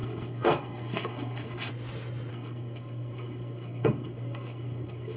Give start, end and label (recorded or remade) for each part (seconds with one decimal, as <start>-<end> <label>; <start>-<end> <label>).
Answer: 0.0-1.7 remade; 1.7-2.3 recorded; 2.3-5.2 remade